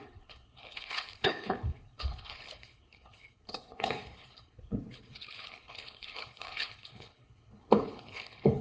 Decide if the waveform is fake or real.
fake